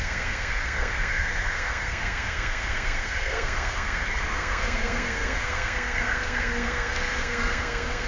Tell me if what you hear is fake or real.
fake